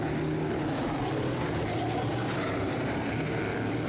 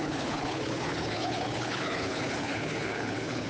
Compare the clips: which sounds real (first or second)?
first